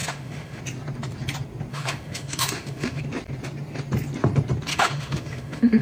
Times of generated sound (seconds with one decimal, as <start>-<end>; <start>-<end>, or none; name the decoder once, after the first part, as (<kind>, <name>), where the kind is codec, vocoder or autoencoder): 0.0-0.6 (autoencoder, DAC-VAE); 1.7-3.0; 4.7-5.8